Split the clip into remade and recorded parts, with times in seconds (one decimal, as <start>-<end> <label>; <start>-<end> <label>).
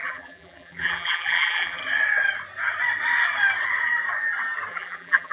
0.0-1.8 remade; 1.8-4.7 recorded; 4.7-5.3 remade